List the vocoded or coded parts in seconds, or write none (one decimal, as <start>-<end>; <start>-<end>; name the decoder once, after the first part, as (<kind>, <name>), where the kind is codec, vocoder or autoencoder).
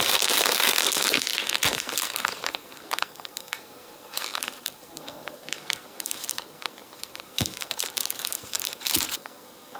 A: 0.0-9.8 (codec, SNAC)